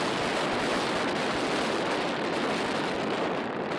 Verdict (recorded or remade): recorded